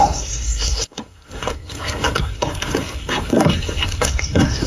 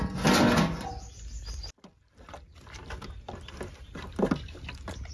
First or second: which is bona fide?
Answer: second